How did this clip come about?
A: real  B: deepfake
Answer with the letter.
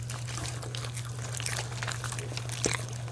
A